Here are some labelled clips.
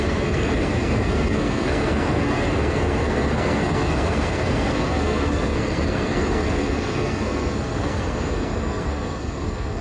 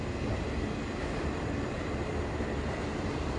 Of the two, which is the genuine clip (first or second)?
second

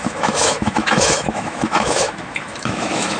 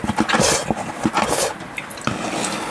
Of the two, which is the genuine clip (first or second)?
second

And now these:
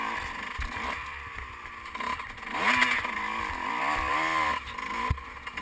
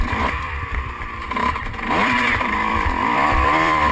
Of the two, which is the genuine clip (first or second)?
first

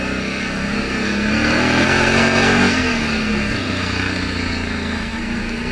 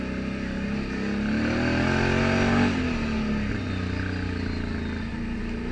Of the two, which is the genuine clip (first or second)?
second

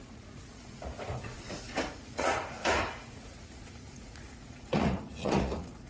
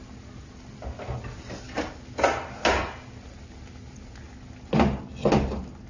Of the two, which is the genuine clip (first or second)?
second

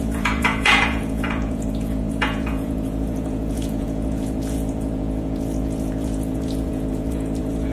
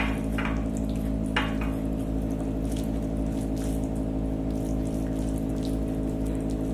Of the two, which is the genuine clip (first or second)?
second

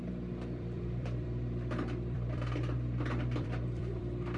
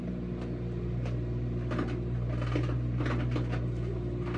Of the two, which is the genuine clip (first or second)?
second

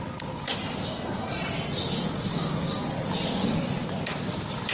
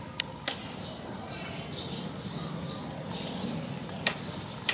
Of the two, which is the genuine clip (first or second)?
first